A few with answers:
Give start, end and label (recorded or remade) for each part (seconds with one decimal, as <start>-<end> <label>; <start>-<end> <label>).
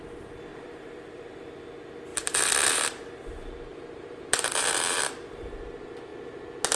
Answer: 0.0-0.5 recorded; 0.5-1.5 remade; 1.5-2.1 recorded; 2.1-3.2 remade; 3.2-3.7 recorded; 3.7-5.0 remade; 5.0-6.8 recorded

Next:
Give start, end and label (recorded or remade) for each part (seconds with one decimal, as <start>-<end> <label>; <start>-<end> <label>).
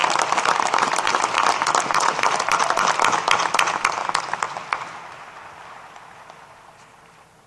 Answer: 0.0-3.0 remade; 3.0-7.5 recorded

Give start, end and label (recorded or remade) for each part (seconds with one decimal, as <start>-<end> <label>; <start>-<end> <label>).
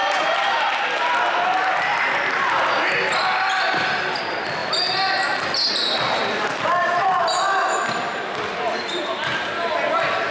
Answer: 0.0-10.3 recorded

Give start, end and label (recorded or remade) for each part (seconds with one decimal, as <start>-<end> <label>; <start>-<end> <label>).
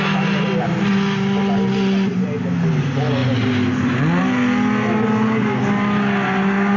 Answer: 0.0-6.8 recorded